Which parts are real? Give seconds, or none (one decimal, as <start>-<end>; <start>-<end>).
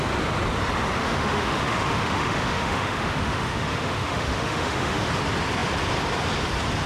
0.0-1.0; 5.1-6.9